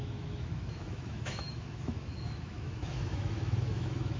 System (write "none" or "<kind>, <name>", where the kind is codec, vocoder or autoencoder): autoencoder, DAC-VAE